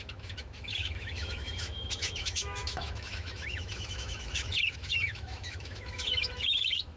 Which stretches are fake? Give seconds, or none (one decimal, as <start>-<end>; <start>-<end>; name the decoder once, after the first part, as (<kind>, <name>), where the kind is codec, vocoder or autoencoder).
0.0-7.0 (autoencoder, DAC-VAE)